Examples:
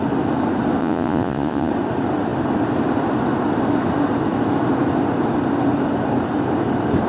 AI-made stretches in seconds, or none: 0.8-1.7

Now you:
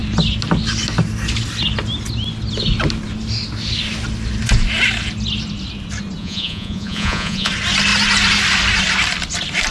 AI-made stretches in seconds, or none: 6.2-7.5

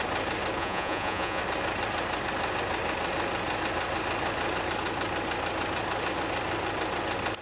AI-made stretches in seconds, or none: 0.6-1.4